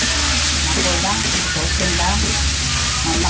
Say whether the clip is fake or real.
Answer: real